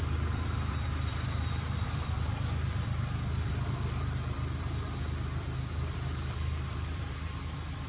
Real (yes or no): no